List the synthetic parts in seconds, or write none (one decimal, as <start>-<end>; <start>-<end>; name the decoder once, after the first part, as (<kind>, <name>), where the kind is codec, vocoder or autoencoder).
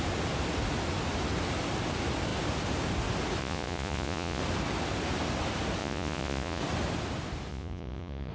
3.4-4.4 (vocoder, Vocos); 5.8-6.6; 7.5-8.3